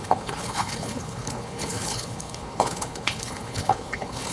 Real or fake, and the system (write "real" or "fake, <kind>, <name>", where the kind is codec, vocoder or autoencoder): fake, codec, HILCodec